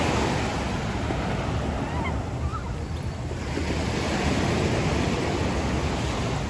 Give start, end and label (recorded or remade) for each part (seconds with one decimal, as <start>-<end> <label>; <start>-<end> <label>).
0.0-6.5 recorded